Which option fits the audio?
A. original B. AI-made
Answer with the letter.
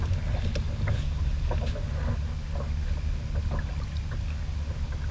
A